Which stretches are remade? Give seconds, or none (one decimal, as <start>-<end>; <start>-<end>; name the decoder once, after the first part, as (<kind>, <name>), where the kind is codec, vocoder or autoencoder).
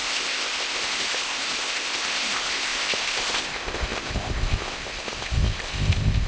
0.0-6.3 (codec, ZipCodec)